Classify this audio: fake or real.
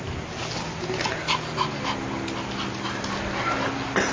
real